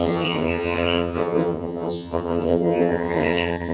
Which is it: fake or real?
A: fake